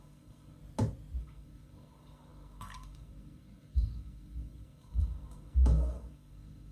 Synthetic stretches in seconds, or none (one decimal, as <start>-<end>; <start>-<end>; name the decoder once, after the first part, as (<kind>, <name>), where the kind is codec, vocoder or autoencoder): 0.0-0.6 (codec, SNAC); 1.2-6.7